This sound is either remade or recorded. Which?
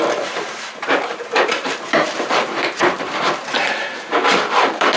remade